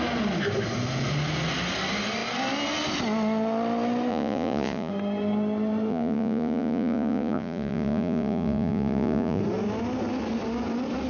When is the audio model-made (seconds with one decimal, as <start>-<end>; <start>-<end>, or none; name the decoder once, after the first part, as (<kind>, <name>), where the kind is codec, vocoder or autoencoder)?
4.1-4.9 (vocoder, Vocos); 5.9-9.4